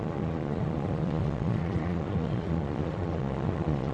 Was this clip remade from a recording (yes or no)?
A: yes